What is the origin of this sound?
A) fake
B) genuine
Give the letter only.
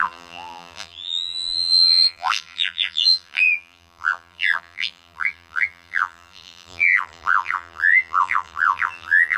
A